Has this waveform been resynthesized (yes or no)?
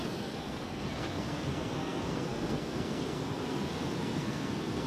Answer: yes